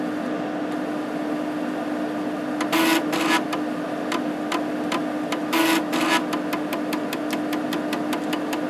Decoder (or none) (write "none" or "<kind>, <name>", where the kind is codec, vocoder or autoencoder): none